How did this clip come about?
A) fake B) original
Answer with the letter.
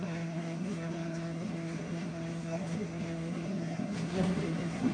A